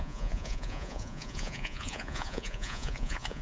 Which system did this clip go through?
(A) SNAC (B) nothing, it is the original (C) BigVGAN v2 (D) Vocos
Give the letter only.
D